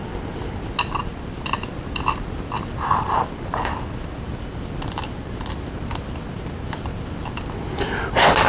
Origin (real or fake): real